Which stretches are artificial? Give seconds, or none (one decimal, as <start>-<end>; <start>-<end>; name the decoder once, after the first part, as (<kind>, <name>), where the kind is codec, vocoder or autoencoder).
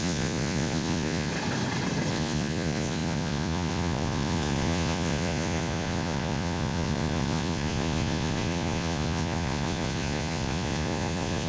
0.0-1.3 (vocoder, Vocos); 2.1-11.5